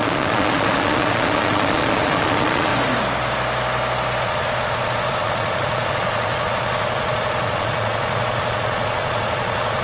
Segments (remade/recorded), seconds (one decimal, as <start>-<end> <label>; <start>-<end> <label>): 0.0-2.7 remade; 2.7-4.2 recorded; 4.2-9.8 remade